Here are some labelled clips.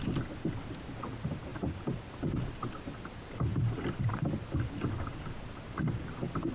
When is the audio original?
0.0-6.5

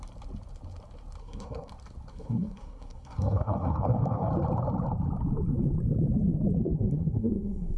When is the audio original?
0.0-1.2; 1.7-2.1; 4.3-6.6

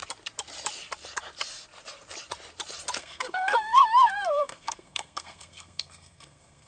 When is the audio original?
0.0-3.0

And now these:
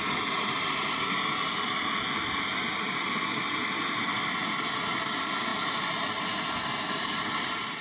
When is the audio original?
0.0-7.8